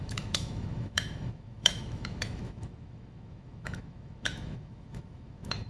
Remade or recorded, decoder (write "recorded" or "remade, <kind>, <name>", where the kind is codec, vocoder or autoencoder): remade, autoencoder, DAC-VAE